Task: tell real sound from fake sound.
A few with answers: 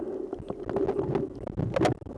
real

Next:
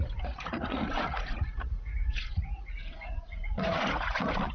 fake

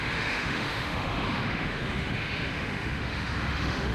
fake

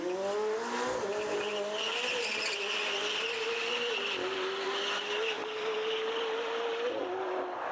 real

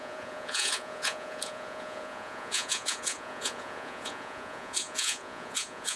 fake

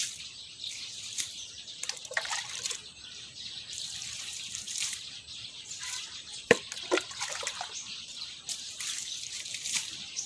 fake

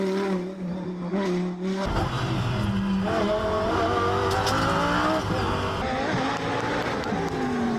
real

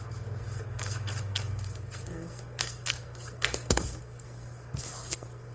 fake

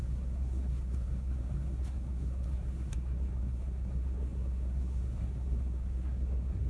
fake